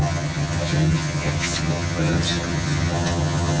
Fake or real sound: fake